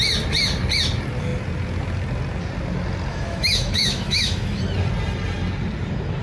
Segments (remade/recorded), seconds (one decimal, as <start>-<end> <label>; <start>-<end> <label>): 0.0-3.1 recorded; 3.1-4.6 remade; 4.6-6.2 recorded